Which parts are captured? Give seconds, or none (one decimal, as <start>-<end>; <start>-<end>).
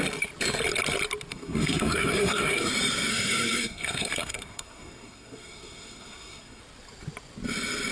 0.0-1.3; 2.7-3.1; 6.6-7.9